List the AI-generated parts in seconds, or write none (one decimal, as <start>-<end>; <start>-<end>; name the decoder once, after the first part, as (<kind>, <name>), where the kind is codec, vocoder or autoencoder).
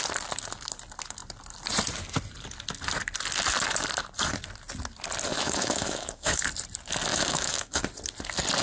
5.3-6.4 (autoencoder, DAC-VAE); 7.1-7.8